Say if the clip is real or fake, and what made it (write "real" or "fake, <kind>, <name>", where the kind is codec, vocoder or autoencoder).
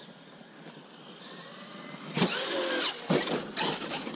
real